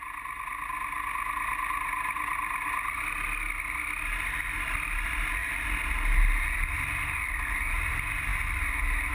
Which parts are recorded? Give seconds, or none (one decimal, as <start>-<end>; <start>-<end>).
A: 0.0-9.1